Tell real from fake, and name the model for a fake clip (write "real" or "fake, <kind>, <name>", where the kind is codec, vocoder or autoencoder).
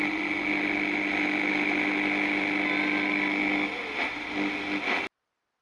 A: real